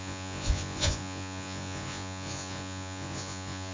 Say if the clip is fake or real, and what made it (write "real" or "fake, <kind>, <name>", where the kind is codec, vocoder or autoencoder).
fake, vocoder, Vocos